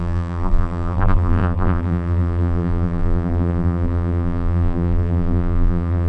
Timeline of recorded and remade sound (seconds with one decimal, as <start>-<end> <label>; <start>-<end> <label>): 0.0-6.1 remade